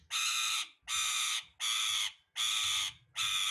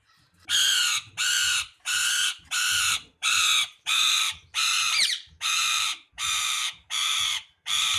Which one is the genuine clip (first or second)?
first